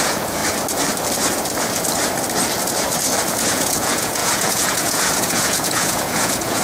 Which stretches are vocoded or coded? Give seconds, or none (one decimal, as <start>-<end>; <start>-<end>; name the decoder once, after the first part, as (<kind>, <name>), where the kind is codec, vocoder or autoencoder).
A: 0.0-0.4 (vocoder, Vocos); 3.3-6.6